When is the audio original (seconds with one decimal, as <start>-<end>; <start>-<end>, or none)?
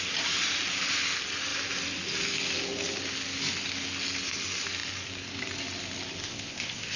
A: 0.0-6.2